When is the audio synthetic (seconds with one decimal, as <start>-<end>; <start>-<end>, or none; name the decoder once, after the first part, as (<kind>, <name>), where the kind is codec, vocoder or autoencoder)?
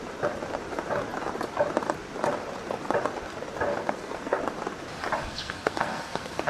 3.7-4.4 (codec, SNAC); 5.2-6.5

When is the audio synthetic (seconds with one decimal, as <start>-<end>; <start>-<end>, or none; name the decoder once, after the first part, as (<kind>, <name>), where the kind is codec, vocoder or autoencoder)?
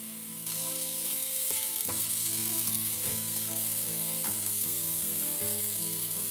0.0-6.3 (codec, SNAC)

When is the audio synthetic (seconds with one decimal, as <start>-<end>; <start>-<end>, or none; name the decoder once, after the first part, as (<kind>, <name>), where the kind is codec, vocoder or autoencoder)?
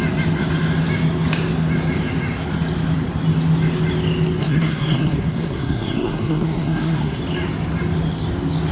4.4-7.2 (codec, SNAC)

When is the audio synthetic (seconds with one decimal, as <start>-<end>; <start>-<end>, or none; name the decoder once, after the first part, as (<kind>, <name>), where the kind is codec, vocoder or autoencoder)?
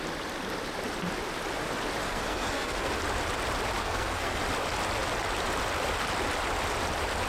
2.0-2.9 (codec, SNAC); 3.8-4.4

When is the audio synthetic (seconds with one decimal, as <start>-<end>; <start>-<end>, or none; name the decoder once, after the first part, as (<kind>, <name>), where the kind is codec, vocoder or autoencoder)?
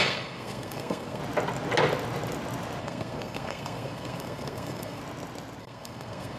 0.0-1.2 (codec, SNAC); 2.8-5.0; 5.6-6.4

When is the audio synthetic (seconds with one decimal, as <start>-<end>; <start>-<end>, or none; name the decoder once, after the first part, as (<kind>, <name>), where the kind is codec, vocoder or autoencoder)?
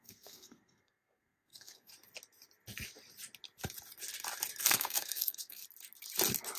0.0-1.9 (codec, SNAC); 4.6-5.6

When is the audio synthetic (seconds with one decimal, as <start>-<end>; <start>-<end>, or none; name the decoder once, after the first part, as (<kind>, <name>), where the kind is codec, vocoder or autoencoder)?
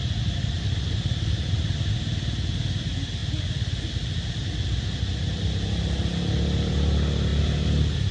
none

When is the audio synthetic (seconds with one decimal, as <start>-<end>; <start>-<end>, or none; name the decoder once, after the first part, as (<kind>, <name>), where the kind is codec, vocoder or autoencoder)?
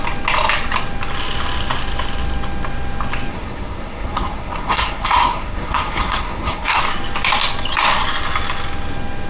3.3-6.8 (codec, SNAC)